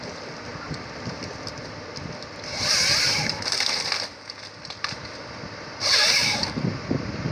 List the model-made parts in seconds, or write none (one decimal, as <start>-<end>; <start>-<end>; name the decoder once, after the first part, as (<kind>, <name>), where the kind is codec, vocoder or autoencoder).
0.0-7.3 (vocoder, BigVGAN v2)